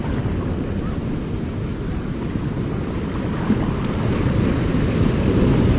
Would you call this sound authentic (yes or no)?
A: yes